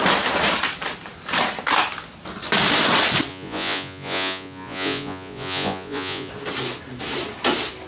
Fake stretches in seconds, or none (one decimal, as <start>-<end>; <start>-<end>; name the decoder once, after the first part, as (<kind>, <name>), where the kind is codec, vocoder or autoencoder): 3.3-6.3 (vocoder, Vocos)

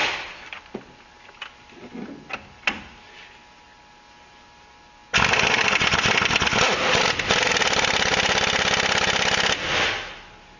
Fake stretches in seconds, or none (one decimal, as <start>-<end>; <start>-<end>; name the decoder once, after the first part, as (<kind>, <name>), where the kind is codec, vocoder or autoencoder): none

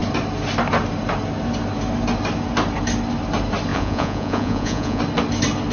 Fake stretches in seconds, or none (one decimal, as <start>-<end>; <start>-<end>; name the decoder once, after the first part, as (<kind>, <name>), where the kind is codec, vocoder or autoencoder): 3.7-5.0 (vocoder, Vocos)

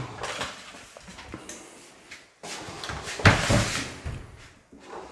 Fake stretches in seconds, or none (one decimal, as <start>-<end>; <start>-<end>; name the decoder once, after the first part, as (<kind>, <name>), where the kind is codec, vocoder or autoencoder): none